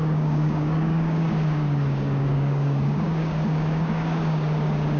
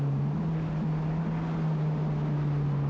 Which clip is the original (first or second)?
second